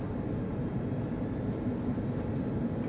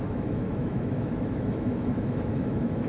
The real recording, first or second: first